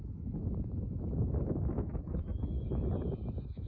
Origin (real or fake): fake